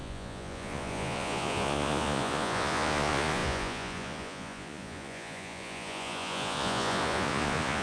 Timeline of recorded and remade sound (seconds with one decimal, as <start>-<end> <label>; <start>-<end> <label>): 0.0-7.8 remade